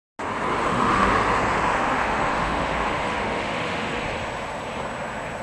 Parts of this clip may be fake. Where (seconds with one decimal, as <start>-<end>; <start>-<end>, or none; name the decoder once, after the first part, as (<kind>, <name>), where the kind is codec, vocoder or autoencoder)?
0.6-1.1 (autoencoder, DAC-VAE); 1.7-4.0